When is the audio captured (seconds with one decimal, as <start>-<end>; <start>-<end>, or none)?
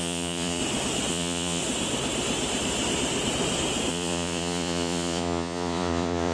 0.6-1.1; 1.6-3.9